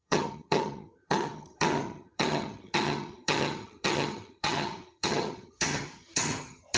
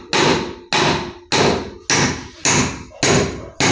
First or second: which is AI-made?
first